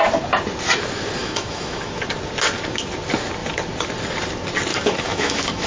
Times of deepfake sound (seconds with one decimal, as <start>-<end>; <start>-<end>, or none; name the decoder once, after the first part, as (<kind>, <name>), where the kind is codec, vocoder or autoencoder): 1.2-2.0 (autoencoder, DAC-VAE); 4.7-5.7